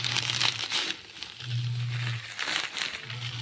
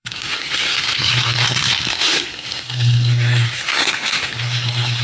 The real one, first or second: first